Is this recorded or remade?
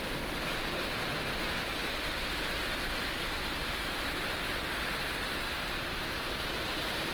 recorded